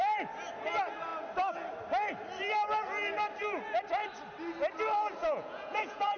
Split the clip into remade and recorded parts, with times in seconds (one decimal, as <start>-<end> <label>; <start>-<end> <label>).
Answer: 0.0-5.2 recorded; 5.2-6.2 remade